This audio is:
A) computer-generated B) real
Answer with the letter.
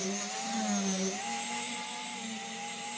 B